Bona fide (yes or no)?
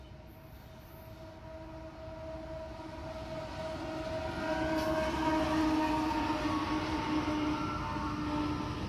yes